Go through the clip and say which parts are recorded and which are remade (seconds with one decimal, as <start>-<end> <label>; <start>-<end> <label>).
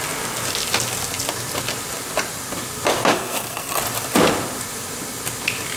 0.0-3.1 recorded; 3.1-3.8 remade; 3.8-5.8 recorded